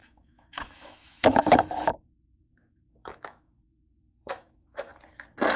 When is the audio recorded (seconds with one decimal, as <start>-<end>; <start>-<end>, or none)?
4.9-5.6

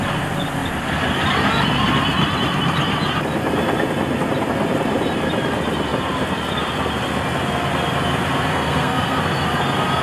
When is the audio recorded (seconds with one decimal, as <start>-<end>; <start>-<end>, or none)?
0.0-8.5; 9.2-10.0

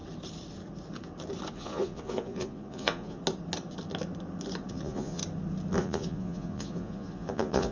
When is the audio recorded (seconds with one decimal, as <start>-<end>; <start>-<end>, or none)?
0.0-1.5; 3.2-4.7; 5.2-5.8

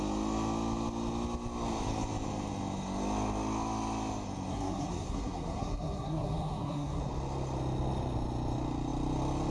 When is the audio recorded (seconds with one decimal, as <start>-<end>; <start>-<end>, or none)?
0.0-4.5; 7.0-9.5

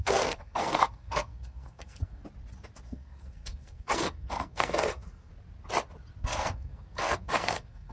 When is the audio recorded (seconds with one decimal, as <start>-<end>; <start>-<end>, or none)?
2.2-2.8; 5.3-6.2

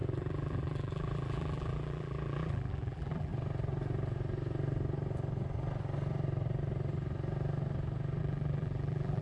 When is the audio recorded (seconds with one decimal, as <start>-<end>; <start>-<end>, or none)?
3.3-8.2